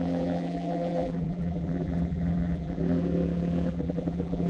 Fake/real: fake